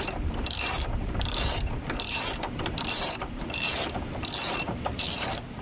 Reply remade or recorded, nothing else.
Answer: remade